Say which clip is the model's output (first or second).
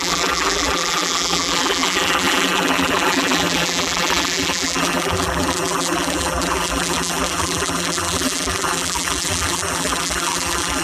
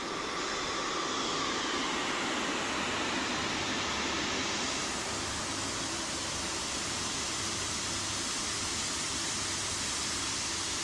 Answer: first